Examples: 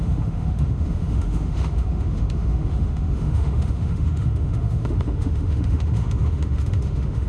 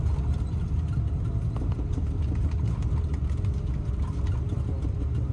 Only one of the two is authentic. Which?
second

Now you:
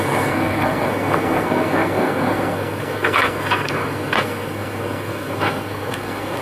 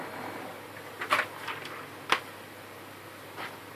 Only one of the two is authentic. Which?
second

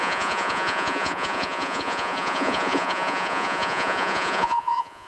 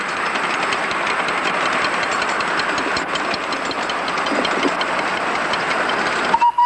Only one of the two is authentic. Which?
second